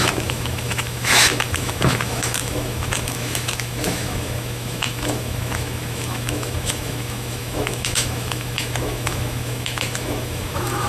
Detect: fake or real fake